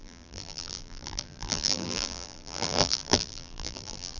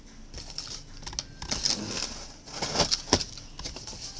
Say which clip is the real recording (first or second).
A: second